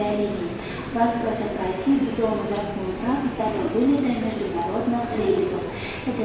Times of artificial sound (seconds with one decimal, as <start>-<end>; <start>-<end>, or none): 5.1-5.7